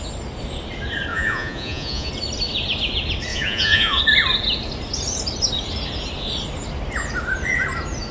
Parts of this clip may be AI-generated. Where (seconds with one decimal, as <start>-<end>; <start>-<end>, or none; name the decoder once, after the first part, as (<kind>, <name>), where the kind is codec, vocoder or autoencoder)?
1.1-2.1 (vocoder, Vocos); 3.3-4.0